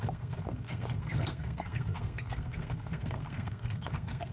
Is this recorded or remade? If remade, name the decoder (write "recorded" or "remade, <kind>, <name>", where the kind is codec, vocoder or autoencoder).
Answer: remade, codec, SNAC